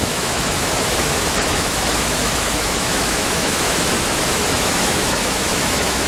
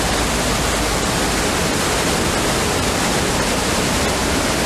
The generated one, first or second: first